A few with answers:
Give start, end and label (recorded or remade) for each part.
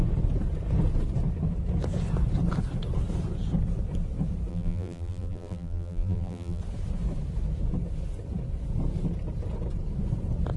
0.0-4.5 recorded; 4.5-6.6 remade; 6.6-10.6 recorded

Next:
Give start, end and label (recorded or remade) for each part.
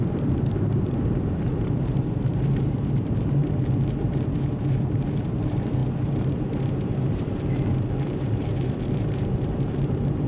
0.0-3.4 remade; 3.4-4.0 recorded; 4.0-10.3 remade